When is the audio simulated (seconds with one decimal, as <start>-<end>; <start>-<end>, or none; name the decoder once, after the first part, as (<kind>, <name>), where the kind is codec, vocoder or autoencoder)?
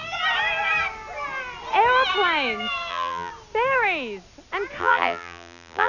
2.9-3.3 (vocoder, BigVGAN v2); 4.8-5.9